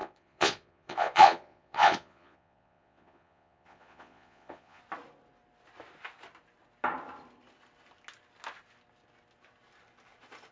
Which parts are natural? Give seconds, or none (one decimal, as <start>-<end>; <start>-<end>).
4.8-10.5